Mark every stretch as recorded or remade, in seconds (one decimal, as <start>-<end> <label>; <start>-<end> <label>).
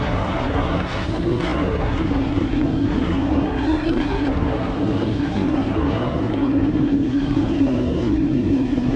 0.0-9.0 remade